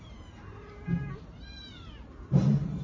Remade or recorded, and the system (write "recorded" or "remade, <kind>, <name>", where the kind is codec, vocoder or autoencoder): remade, vocoder, BigVGAN v2